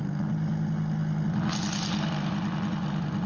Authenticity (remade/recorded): recorded